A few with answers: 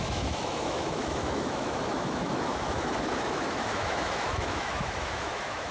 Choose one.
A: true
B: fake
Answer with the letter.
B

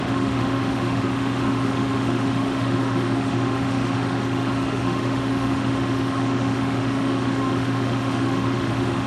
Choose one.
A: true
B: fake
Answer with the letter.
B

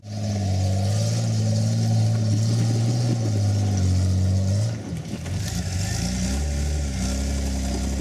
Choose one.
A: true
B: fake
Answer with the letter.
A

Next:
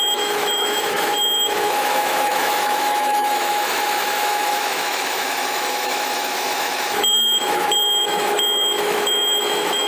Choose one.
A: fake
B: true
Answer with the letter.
A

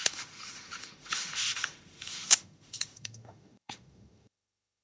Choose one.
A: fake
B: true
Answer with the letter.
A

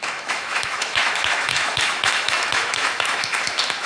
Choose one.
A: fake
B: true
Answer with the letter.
A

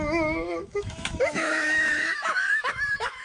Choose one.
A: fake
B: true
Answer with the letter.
A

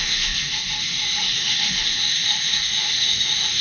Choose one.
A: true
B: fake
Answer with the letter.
B